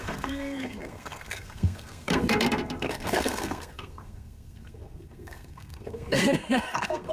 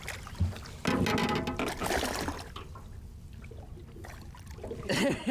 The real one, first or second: second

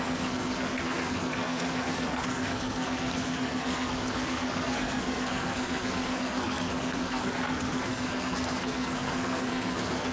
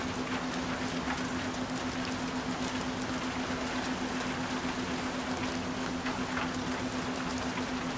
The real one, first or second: second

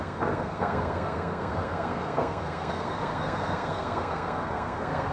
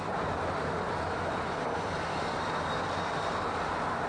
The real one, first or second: second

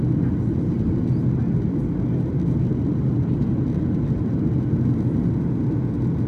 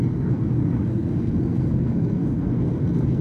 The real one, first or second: first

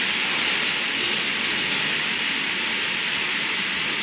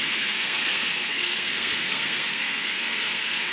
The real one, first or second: first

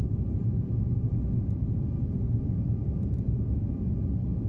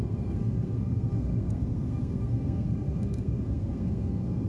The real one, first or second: first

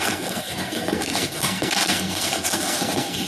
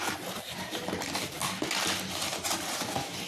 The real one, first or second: second